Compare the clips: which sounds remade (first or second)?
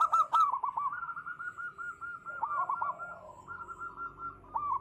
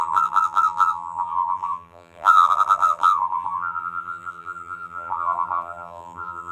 second